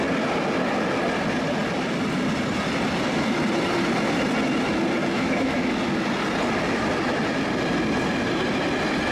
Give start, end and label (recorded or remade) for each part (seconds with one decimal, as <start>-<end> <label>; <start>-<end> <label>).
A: 0.0-5.0 recorded; 5.0-5.8 remade; 5.8-9.1 recorded